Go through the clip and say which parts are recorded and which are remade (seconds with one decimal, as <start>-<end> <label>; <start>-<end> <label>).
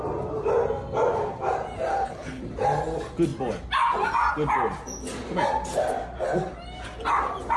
0.0-1.9 recorded; 1.9-2.4 remade; 2.4-7.6 recorded